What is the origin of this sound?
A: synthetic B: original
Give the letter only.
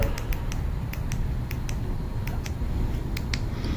A